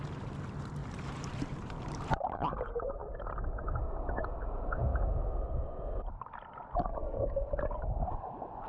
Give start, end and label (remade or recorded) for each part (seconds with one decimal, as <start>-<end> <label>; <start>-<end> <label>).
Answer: 0.0-0.8 recorded; 0.8-2.5 remade; 2.5-8.7 recorded